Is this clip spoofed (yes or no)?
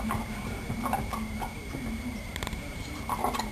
no